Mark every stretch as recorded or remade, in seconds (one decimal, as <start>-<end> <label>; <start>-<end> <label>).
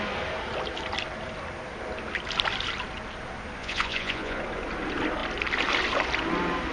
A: 0.0-3.6 recorded; 3.6-4.4 remade; 4.4-6.7 recorded